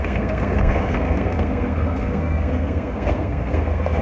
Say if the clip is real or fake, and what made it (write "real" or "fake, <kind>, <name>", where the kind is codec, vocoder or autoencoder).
fake, codec, SNAC